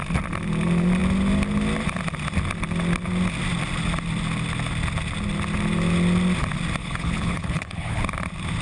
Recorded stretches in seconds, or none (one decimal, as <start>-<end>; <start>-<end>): 0.0-6.8; 8.0-8.6